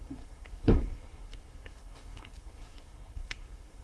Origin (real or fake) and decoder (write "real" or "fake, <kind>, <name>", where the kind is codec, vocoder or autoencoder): fake, codec, SNAC